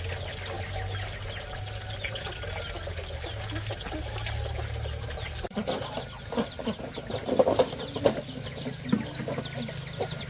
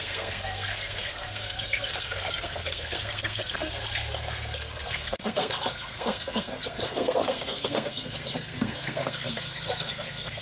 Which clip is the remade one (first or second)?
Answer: second